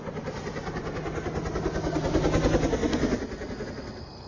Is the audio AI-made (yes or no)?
no